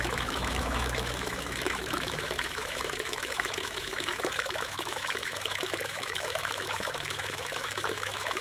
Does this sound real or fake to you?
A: fake